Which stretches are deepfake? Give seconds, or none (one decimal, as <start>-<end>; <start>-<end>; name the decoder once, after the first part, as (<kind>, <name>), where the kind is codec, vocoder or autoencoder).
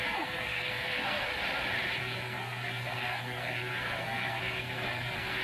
0.0-1.3 (codec, SNAC); 2.0-5.4